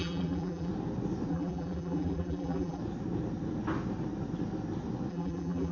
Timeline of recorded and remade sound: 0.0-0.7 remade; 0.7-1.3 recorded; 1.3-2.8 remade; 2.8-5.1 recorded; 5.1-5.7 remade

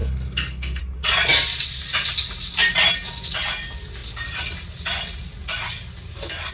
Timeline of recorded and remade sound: 0.0-0.8 remade; 0.8-6.5 recorded

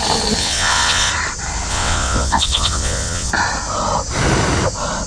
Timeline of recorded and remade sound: 0.0-0.4 recorded; 0.4-1.1 remade; 1.1-1.7 recorded; 1.7-3.3 remade; 3.3-5.1 recorded

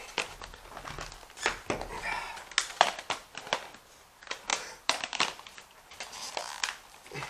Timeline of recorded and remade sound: 0.0-4.5 recorded; 4.5-6.5 remade; 6.5-7.3 recorded

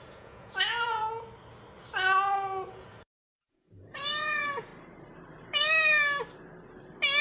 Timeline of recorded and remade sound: 0.0-1.0 remade; 1.0-2.7 recorded; 2.7-4.7 remade; 4.7-7.2 recorded

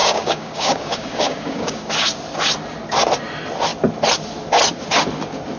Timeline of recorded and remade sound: 0.0-1.9 remade; 1.9-5.6 recorded

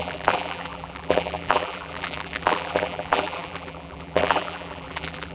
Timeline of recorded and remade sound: 0.0-5.3 remade

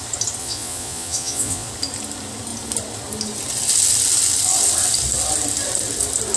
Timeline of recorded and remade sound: 0.0-0.4 recorded; 0.4-1.7 remade; 1.7-6.4 recorded